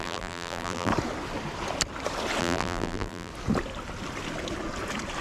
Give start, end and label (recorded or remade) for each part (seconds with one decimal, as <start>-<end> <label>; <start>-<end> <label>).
0.0-0.9 remade; 0.9-2.4 recorded; 2.4-3.3 remade; 3.3-5.2 recorded